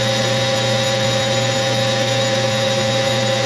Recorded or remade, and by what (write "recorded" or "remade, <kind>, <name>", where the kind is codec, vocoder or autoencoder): recorded